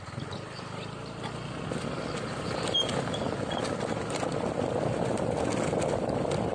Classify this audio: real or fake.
real